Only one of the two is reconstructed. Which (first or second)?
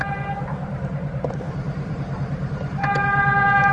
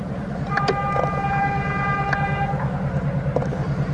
first